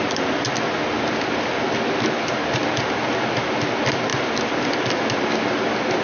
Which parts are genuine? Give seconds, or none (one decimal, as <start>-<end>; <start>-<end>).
0.0-6.0